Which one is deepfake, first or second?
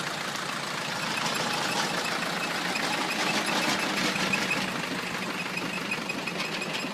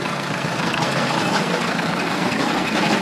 second